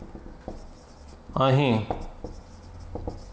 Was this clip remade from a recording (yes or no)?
no